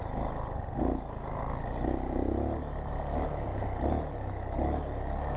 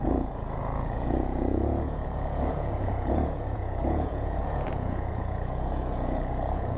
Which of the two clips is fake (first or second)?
second